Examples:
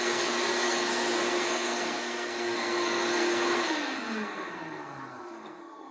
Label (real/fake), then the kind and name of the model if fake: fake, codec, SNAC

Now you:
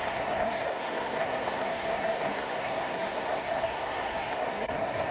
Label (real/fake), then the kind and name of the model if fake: fake, codec, SNAC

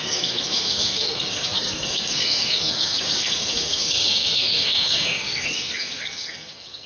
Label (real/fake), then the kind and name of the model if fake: fake, codec, SNAC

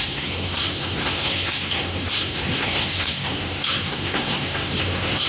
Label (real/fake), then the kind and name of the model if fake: fake, codec, SNAC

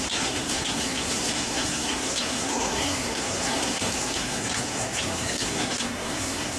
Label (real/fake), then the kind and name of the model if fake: fake, codec, SNAC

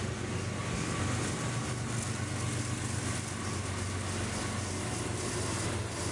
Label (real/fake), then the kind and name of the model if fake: real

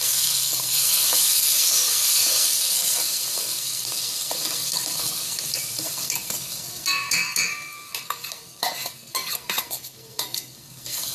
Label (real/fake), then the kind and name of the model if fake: fake, codec, SNAC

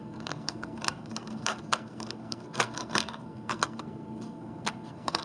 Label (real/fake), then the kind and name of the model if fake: fake, codec, SNAC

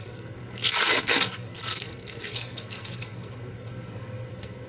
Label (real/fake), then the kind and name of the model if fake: fake, codec, SNAC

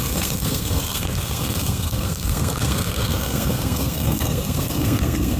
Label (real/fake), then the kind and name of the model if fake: fake, codec, SNAC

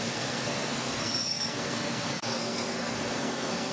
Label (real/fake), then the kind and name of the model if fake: fake, codec, SNAC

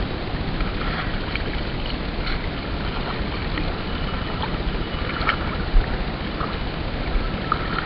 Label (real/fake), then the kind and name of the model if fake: real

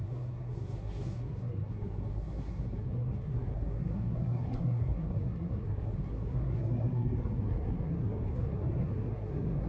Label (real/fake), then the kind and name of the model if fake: fake, codec, SNAC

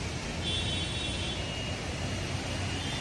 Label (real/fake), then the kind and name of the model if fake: real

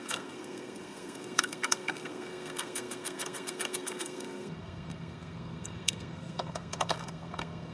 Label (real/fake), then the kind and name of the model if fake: fake, codec, SNAC